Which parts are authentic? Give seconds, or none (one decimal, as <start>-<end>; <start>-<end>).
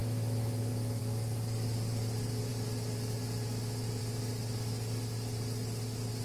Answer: 1.0-6.2